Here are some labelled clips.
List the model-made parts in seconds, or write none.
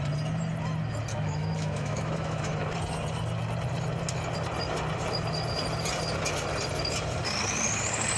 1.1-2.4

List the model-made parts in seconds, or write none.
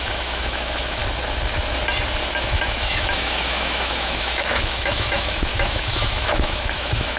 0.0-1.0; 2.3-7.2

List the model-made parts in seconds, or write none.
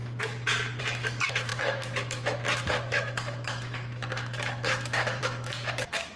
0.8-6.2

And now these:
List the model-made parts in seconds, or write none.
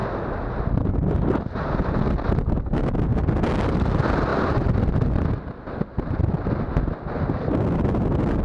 none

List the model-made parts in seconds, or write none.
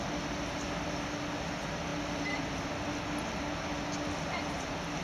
none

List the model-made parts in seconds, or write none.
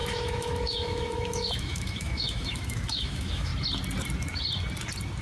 0.0-3.5